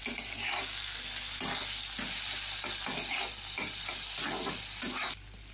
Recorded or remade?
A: recorded